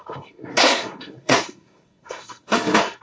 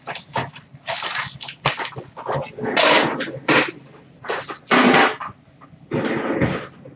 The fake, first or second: first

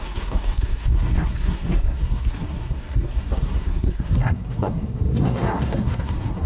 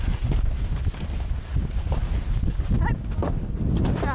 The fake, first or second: first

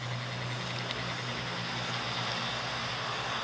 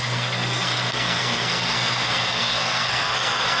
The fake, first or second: second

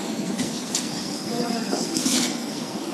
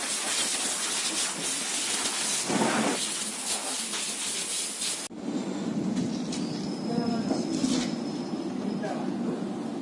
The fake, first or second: first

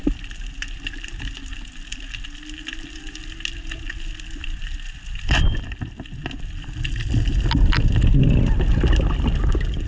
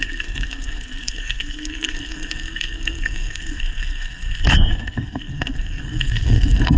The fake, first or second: second